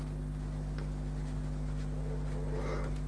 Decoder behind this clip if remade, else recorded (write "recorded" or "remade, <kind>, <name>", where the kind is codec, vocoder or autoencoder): recorded